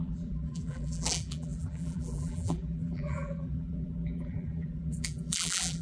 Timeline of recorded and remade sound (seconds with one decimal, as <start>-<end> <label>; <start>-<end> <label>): 0.0-5.8 remade